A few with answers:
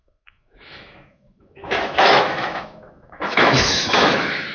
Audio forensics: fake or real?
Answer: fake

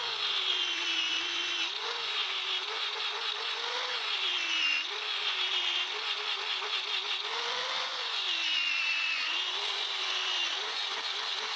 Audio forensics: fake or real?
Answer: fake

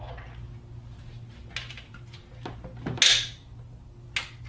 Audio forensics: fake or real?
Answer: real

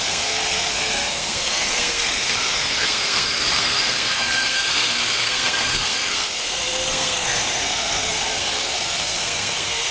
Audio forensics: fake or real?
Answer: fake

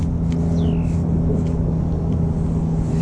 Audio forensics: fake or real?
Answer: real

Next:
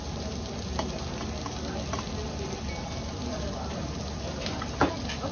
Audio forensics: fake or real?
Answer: real